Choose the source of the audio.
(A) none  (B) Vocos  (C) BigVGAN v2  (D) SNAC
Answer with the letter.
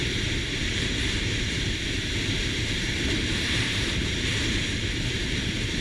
C